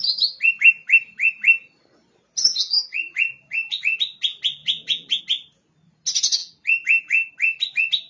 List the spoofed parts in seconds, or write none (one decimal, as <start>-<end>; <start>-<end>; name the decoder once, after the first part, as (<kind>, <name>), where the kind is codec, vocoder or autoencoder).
2.5-3.8 (vocoder, BigVGAN v2); 4.6-5.2; 6.4-7.3